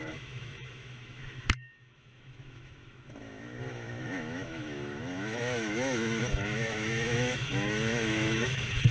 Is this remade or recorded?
remade